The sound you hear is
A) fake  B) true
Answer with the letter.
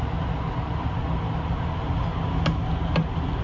B